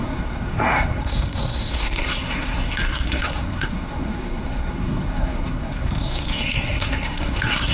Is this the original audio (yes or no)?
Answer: no